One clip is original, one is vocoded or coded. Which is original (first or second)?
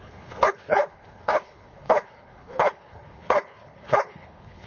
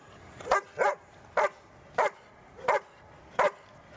second